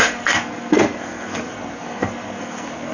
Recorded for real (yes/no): no